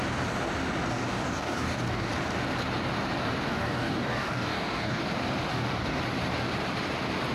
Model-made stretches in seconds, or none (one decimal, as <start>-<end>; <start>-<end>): 0.9-2.1; 3.5-5.0; 5.5-6.0